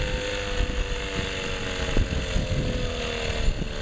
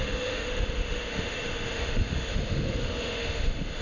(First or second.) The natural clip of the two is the first